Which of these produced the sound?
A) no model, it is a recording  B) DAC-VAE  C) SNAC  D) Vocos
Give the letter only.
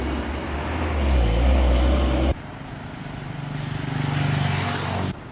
A